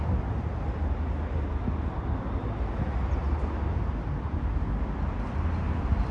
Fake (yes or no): no